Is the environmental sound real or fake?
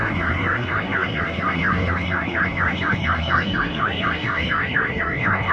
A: fake